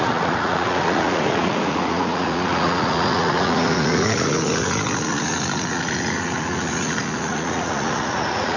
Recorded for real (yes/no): no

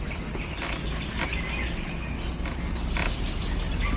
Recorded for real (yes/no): yes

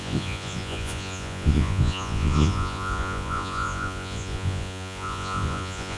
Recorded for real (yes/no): no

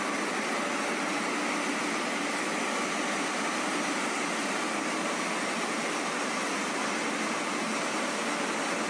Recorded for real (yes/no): yes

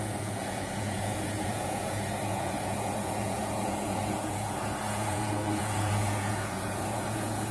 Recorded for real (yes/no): no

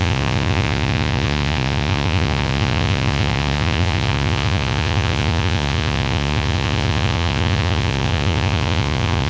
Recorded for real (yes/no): no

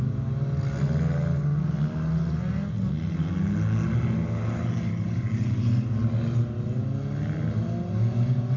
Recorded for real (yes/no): yes